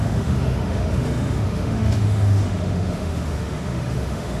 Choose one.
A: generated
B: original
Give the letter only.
A